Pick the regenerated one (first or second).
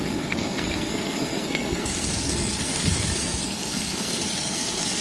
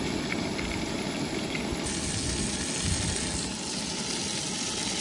first